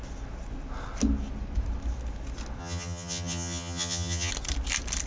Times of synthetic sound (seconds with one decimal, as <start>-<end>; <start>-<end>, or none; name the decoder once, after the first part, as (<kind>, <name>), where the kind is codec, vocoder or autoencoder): 2.6-4.3 (vocoder, HiFi-GAN)